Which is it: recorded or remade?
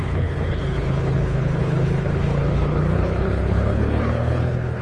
remade